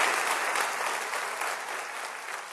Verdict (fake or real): real